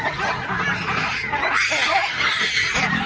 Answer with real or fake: real